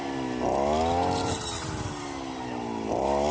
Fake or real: real